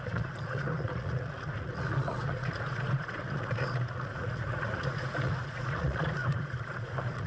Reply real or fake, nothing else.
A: fake